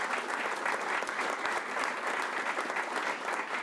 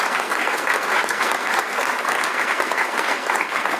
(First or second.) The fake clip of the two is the second